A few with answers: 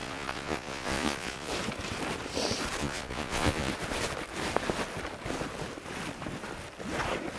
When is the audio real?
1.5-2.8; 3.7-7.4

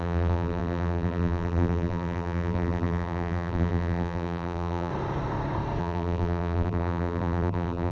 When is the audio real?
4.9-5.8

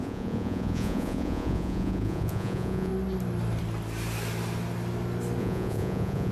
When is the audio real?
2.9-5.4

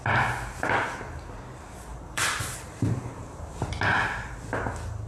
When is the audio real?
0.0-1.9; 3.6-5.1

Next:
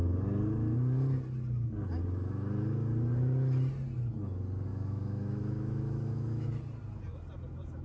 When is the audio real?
0.0-4.7; 6.6-7.8